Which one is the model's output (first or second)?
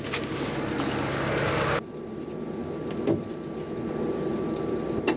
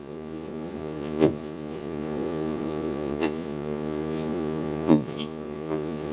second